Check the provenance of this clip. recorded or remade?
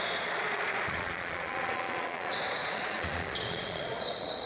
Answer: remade